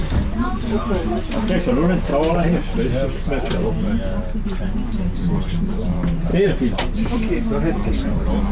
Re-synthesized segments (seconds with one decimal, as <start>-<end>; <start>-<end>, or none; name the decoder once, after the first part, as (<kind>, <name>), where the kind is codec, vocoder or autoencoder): 0.0-1.7 (vocoder, BigVGAN v2); 6.3-6.9